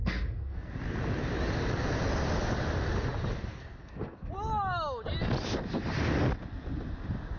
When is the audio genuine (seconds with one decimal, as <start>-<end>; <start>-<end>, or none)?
0.7-3.5; 4.3-7.4